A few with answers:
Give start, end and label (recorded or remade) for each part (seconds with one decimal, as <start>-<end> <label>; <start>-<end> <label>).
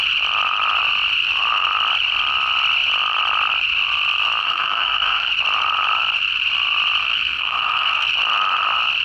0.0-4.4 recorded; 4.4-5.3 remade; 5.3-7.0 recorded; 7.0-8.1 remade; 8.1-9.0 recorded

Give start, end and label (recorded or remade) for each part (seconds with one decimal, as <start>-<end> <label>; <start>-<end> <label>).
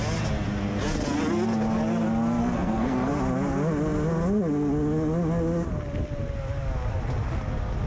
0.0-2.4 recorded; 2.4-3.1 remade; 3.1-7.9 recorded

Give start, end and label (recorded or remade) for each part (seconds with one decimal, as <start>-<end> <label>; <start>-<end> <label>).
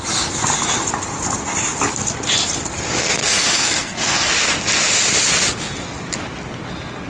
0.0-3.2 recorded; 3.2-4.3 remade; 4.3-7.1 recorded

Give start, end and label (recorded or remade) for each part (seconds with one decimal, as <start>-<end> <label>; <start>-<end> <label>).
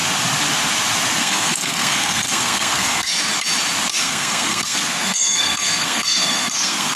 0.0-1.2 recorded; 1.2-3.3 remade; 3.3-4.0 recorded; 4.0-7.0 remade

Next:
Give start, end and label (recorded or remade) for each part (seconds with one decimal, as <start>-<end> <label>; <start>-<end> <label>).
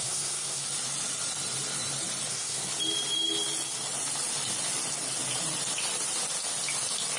0.0-0.6 remade; 0.6-2.3 recorded; 2.3-2.7 remade; 2.7-7.2 recorded